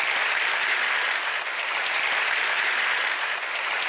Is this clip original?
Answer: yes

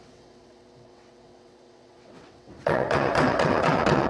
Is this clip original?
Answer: no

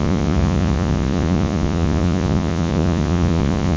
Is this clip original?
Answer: no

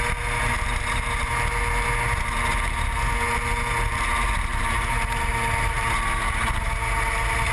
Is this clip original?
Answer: yes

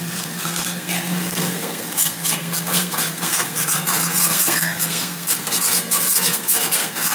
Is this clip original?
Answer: no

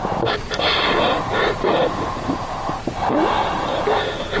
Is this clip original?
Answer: yes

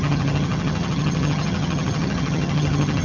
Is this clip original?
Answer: no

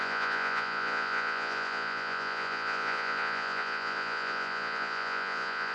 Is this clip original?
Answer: no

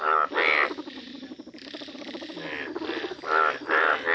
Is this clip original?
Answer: yes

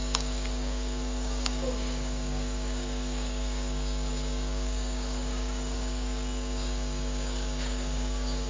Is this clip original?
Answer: no